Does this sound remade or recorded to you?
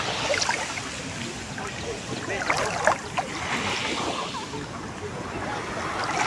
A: recorded